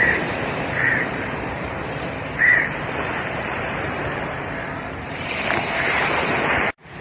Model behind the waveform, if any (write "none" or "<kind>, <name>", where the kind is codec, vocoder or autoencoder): vocoder, BigVGAN v2